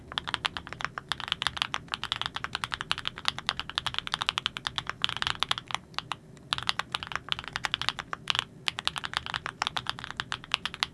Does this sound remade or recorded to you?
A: recorded